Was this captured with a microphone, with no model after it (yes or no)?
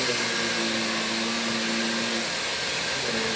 yes